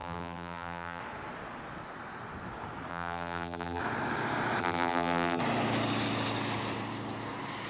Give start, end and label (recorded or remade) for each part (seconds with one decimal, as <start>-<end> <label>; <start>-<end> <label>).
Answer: 0.0-1.0 remade; 1.0-2.9 recorded; 2.9-3.8 remade; 3.8-4.6 recorded; 4.6-5.4 remade; 5.4-7.7 recorded